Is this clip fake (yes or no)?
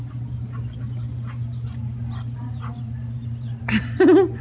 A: no